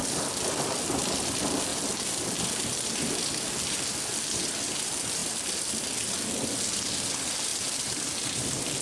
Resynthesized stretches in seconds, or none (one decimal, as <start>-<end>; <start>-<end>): 0.0-0.8; 1.7-2.6; 7.5-8.8